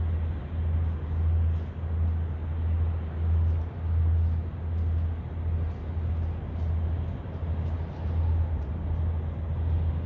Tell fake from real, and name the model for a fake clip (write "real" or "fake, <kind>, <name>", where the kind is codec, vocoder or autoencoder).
real